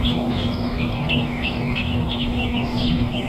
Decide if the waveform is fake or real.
fake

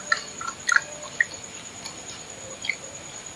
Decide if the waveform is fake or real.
real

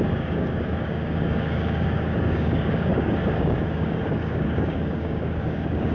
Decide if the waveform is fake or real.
fake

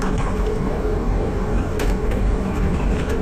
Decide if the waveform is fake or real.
fake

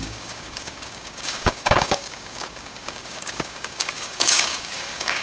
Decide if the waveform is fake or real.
fake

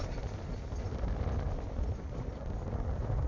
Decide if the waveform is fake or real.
real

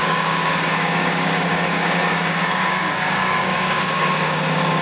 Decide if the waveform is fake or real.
fake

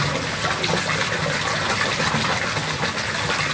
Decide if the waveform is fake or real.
real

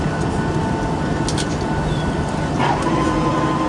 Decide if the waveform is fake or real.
real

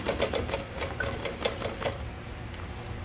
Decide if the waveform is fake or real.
real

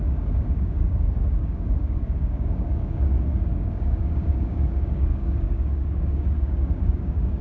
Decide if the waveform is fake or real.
fake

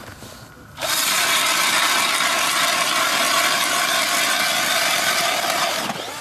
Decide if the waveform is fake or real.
real